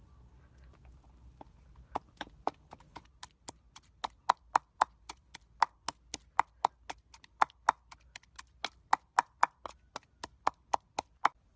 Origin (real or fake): real